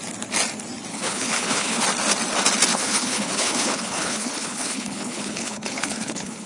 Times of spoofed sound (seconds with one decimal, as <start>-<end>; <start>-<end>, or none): 0.9-1.8; 2.7-6.5